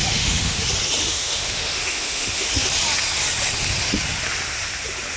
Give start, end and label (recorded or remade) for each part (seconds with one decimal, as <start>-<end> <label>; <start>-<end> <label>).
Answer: 0.0-0.6 remade; 0.6-1.0 recorded; 1.0-2.5 remade; 2.5-5.2 recorded